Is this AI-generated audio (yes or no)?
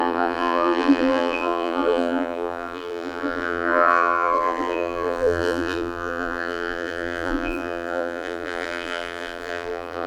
yes